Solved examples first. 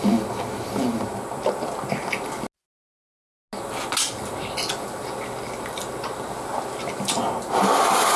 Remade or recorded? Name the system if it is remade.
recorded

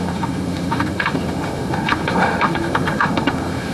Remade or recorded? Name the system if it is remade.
remade, autoencoder, DAC-VAE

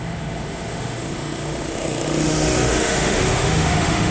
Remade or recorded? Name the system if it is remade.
remade, autoencoder, DAC-VAE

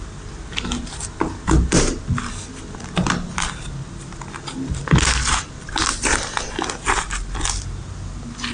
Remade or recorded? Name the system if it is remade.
recorded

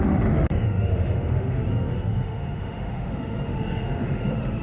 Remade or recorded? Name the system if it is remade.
remade, autoencoder, DAC-VAE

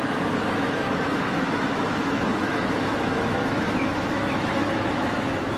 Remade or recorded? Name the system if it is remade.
remade, autoencoder, DAC-VAE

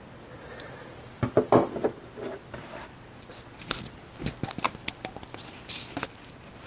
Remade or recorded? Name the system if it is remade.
recorded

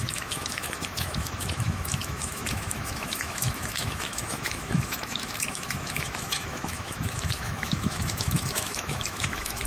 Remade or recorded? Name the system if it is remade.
remade, autoencoder, DAC-VAE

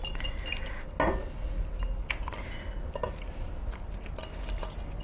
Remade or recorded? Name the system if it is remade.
recorded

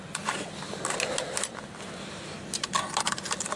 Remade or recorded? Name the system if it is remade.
recorded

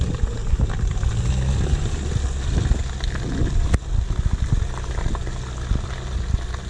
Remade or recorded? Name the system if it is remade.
recorded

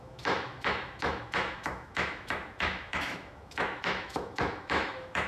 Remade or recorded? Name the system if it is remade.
remade, autoencoder, DAC-VAE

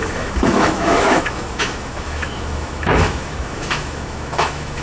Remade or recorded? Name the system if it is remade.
remade, autoencoder, DAC-VAE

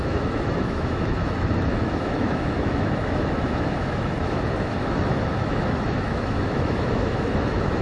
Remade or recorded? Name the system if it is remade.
remade, autoencoder, DAC-VAE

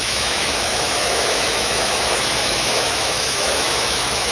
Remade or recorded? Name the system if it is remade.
remade, autoencoder, DAC-VAE